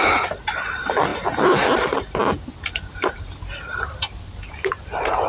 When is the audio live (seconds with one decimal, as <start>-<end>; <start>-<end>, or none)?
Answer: 0.0-5.3